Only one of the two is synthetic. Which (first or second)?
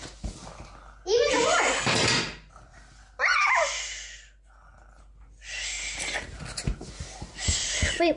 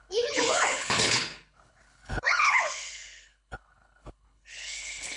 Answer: second